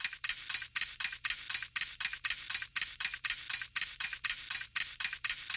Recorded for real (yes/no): yes